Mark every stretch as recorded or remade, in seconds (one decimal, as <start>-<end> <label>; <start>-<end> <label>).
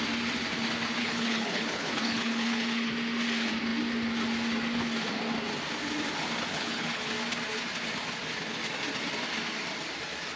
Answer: 0.0-1.0 recorded; 1.0-2.9 remade; 2.9-6.5 recorded; 6.5-7.1 remade; 7.1-10.4 recorded